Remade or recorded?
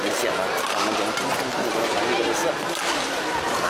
recorded